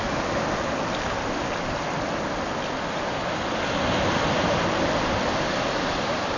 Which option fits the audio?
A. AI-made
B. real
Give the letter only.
B